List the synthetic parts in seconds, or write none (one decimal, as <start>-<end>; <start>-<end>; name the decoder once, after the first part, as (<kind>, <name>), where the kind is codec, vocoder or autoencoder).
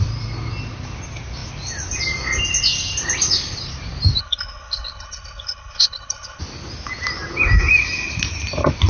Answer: 4.2-6.4 (codec, HILCodec)